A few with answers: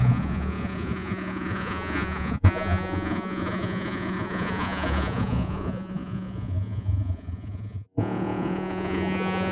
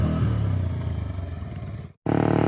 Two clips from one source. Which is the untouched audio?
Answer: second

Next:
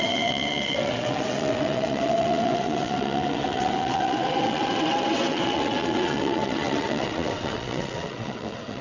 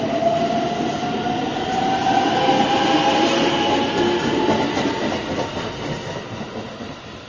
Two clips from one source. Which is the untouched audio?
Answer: second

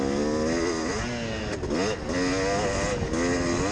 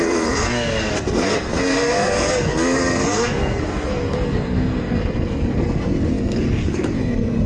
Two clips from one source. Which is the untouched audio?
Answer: first